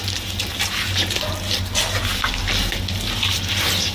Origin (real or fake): real